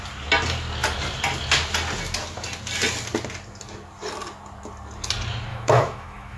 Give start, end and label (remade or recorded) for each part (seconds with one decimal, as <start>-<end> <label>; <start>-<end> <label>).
0.0-5.5 recorded; 5.5-6.4 remade